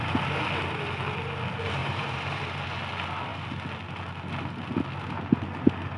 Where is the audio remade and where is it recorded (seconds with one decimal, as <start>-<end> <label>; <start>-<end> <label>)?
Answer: 0.0-1.8 recorded; 1.8-2.4 remade; 2.4-6.0 recorded